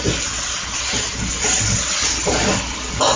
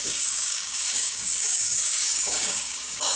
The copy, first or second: second